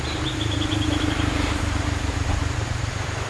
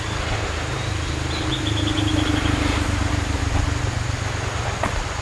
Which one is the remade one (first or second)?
first